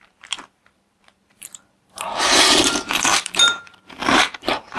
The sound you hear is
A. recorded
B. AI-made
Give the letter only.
B